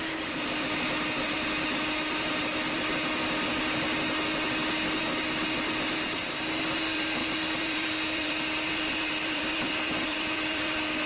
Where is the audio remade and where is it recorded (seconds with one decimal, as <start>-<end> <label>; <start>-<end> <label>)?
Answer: 0.0-3.2 remade; 3.2-5.0 recorded; 5.0-11.1 remade

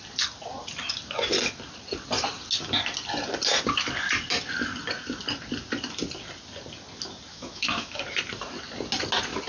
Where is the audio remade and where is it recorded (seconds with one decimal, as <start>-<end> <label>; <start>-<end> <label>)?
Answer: 0.0-7.3 recorded; 7.3-8.0 remade; 8.0-9.5 recorded

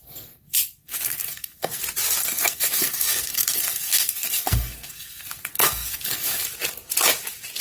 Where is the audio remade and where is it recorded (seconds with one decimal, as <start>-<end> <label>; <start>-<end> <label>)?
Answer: 0.0-1.8 remade; 1.8-2.2 recorded; 2.2-6.4 remade; 6.4-7.6 recorded

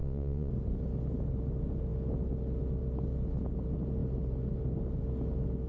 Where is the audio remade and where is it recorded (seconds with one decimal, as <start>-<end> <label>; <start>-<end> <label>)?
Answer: 0.0-0.5 remade; 0.5-5.7 recorded

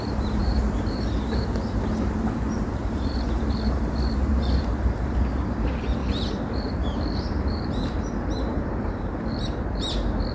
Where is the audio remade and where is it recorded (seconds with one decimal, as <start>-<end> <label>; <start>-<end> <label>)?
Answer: 0.0-6.0 remade; 6.0-6.5 recorded; 6.5-10.3 remade